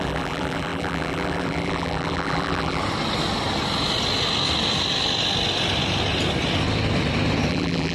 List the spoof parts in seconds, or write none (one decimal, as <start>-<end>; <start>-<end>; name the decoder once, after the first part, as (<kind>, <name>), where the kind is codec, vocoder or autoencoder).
0.0-2.8 (vocoder, BigVGAN v2); 7.5-7.9